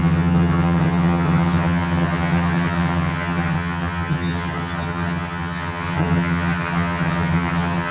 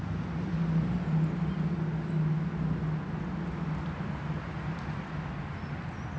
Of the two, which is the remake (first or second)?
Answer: first